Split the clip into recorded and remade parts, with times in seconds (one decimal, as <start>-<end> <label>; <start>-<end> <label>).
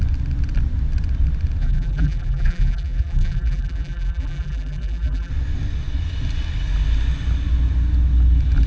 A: 0.0-1.6 recorded; 1.6-5.3 remade; 5.3-8.7 recorded